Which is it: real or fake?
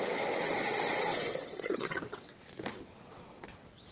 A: fake